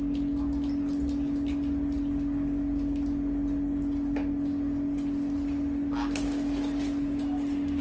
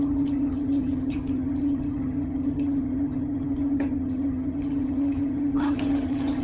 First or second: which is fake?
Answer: second